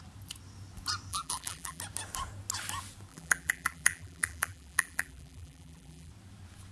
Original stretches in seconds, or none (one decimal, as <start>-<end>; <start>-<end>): 0.0-1.1; 1.8-3.1; 6.1-6.7